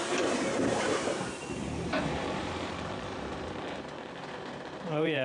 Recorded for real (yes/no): no